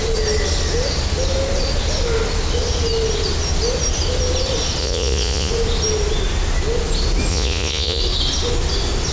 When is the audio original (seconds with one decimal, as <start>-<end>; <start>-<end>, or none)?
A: 0.0-4.8; 5.5-7.3; 8.0-9.1